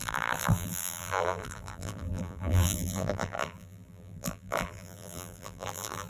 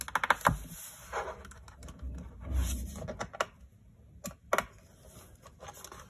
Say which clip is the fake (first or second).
first